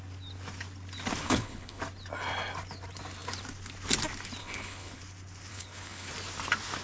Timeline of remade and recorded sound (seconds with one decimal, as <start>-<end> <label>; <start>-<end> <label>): 0.0-1.2 recorded; 1.2-1.8 remade; 1.8-4.4 recorded; 4.4-5.0 remade; 5.0-5.5 recorded; 5.5-6.1 remade; 6.1-6.8 recorded